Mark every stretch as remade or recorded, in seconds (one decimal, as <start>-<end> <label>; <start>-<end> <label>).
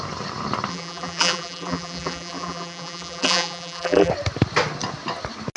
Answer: 0.0-0.7 recorded; 0.7-4.1 remade; 4.1-5.6 recorded